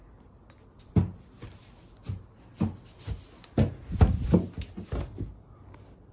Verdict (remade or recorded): recorded